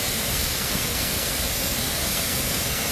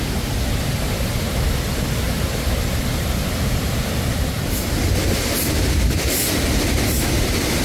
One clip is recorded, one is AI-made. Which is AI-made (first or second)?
first